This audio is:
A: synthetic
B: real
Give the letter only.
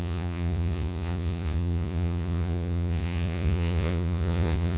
A